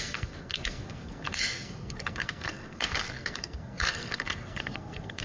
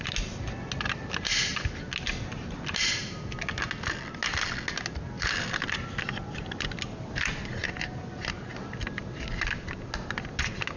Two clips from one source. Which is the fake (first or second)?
first